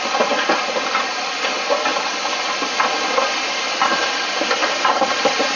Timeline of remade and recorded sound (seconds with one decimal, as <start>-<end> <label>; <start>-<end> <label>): 0.0-4.6 recorded; 4.6-5.6 remade